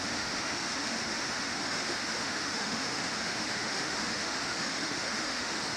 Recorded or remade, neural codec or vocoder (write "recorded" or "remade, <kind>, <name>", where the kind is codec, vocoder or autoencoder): remade, autoencoder, DAC-VAE